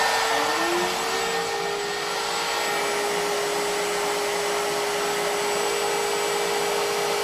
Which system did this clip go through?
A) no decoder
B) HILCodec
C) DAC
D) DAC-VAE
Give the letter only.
A